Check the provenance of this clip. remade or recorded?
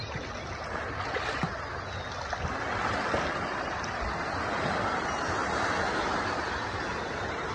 recorded